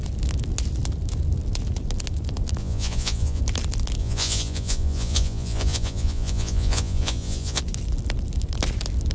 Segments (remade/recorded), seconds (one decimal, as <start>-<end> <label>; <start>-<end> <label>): 0.0-2.6 recorded; 2.6-3.4 remade; 3.4-4.0 recorded; 4.0-7.6 remade; 7.6-9.1 recorded